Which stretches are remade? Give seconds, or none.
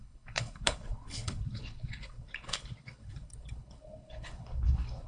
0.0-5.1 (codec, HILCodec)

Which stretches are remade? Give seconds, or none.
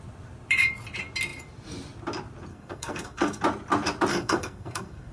2.5-3.4 (codec, SNAC); 4.1-5.1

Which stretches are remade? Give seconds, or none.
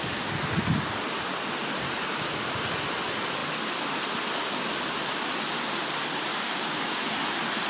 6.3-7.0 (codec, DAC)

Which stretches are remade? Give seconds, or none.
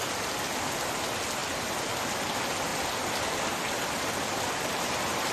2.7-3.2 (vocoder, BigVGAN v2)